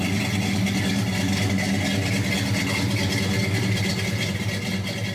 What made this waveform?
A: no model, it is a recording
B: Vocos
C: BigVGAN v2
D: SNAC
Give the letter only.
A